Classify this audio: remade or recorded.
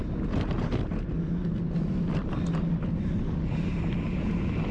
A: recorded